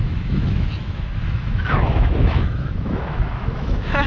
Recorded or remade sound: remade